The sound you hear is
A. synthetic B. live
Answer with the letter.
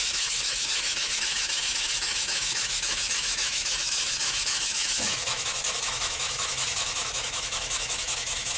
A